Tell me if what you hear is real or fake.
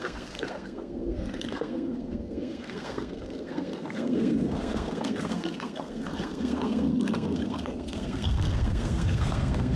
fake